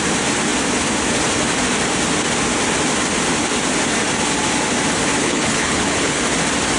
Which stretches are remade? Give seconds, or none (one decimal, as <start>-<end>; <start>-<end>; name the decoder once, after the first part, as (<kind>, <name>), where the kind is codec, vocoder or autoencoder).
5.2-6.2 (codec, HILCodec)